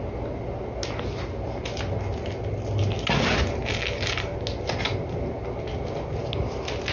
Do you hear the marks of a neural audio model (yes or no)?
no